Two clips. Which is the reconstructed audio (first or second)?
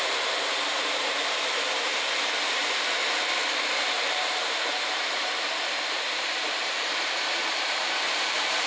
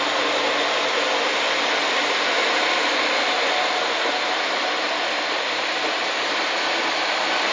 first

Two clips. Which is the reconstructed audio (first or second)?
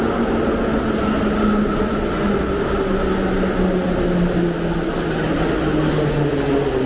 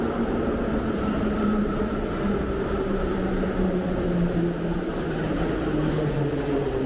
second